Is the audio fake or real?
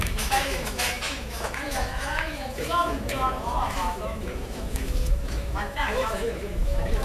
fake